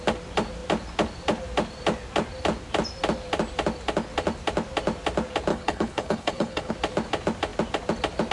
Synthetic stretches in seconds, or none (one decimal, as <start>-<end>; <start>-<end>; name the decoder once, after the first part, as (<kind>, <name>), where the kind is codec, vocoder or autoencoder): 5.5-6.7 (codec, HILCodec)